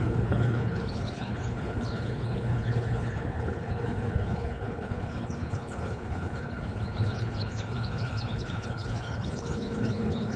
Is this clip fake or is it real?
fake